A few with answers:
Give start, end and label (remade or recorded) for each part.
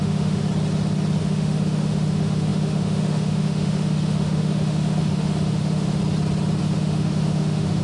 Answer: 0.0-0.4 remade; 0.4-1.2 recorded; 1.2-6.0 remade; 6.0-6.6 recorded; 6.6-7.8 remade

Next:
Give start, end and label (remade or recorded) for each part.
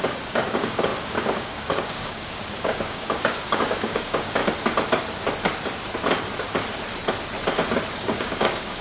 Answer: 0.0-4.4 remade; 4.4-8.0 recorded; 8.0-8.8 remade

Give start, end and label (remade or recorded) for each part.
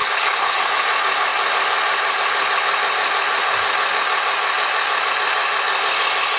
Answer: 0.0-0.7 remade; 0.7-6.4 recorded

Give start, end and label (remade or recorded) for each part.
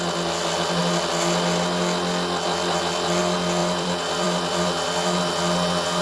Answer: 0.0-3.6 recorded; 3.6-5.3 remade; 5.3-6.0 recorded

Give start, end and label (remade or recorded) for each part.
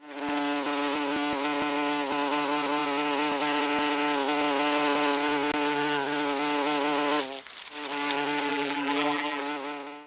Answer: 0.0-8.5 recorded; 8.5-9.4 remade; 9.4-10.1 recorded